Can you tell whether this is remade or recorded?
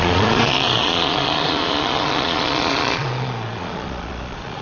remade